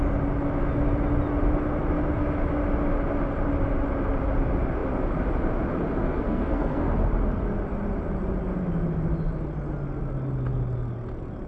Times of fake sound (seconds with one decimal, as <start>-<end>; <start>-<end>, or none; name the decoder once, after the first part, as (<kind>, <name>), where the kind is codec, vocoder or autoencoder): 6.0-6.9 (codec, SNAC)